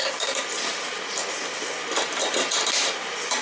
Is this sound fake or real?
real